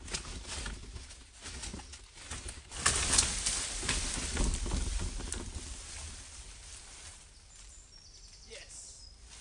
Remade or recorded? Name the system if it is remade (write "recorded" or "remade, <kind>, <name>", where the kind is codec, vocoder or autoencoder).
recorded